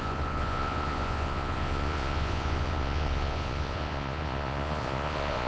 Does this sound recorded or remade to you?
remade